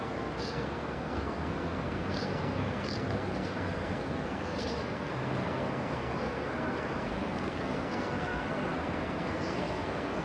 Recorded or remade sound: remade